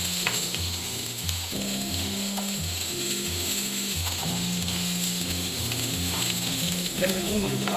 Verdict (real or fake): fake